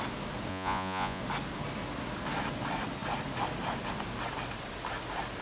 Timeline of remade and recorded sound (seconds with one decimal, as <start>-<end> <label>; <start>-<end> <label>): 0.0-0.5 recorded; 0.5-1.2 remade; 1.2-5.4 recorded